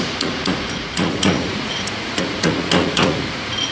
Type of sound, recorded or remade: remade